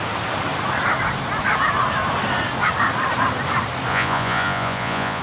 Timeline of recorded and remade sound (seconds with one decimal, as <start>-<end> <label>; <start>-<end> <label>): 0.0-3.9 recorded; 3.9-5.2 remade